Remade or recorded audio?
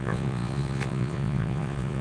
remade